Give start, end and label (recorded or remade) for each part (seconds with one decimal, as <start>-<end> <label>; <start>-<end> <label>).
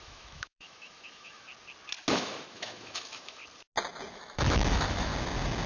0.0-1.5 remade; 1.5-2.1 recorded; 2.1-3.4 remade; 3.4-4.1 recorded; 4.1-5.1 remade; 5.1-5.7 recorded